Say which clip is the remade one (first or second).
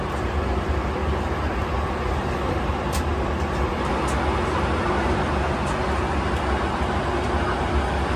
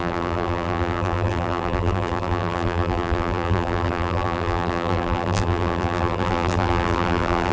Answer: second